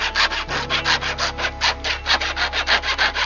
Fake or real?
real